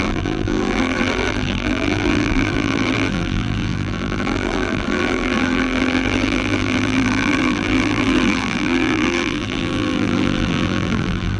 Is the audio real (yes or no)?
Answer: no